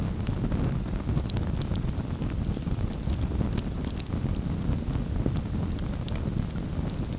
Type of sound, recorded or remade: recorded